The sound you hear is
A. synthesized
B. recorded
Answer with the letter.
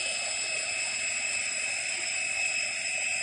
B